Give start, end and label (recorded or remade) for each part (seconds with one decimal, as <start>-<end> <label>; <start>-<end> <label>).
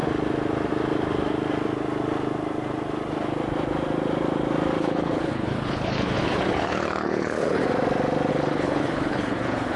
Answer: 0.0-4.8 recorded; 4.8-7.6 remade; 7.6-8.3 recorded; 8.3-9.8 remade